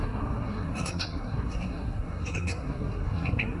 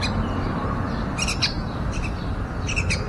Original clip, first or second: second